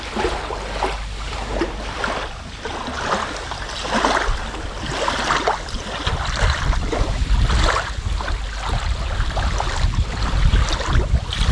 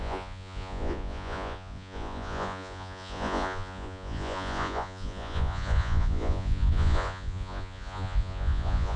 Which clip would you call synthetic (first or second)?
second